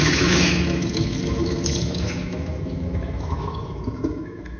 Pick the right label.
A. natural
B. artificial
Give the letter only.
B